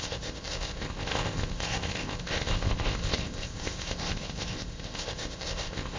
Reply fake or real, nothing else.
fake